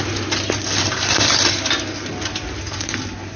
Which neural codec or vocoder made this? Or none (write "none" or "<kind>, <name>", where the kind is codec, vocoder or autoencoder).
none